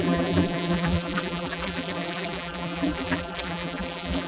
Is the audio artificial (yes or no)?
yes